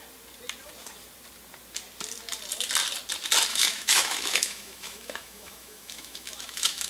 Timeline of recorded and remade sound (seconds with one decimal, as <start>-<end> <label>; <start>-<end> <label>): 0.0-3.5 recorded; 3.5-6.9 remade